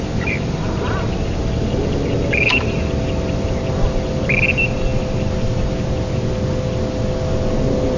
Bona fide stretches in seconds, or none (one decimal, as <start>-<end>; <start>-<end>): 4.9-8.0